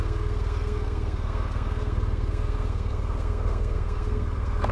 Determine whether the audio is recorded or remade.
remade